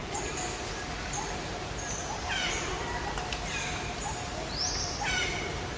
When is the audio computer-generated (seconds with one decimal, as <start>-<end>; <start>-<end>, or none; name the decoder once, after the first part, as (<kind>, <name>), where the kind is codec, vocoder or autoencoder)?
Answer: none